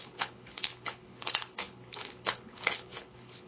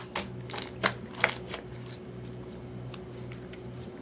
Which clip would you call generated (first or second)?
first